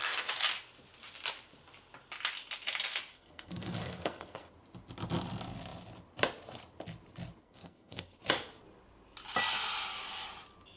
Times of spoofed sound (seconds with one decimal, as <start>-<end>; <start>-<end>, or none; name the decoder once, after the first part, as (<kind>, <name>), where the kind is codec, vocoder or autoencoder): 3.1-4.5 (codec, SNAC); 7.4-8.2